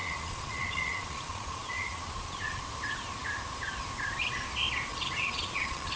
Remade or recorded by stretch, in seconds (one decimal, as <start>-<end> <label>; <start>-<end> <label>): 0.0-2.6 remade; 2.6-4.9 recorded; 4.9-6.0 remade

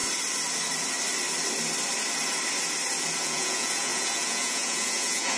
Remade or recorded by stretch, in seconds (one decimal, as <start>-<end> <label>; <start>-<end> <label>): 0.0-3.2 recorded; 3.2-5.4 remade